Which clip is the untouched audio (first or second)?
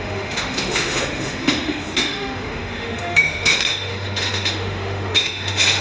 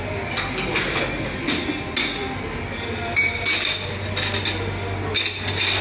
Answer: second